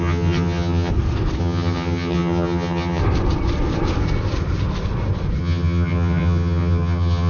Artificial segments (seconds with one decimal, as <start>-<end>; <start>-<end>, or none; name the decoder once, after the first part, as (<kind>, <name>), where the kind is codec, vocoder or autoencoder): 0.0-0.9 (vocoder, HiFi-GAN); 1.4-3.0; 5.4-7.3